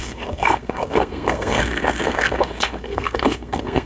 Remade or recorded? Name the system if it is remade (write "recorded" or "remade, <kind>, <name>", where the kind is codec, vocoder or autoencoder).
remade, codec, SNAC